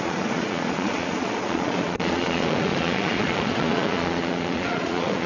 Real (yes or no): no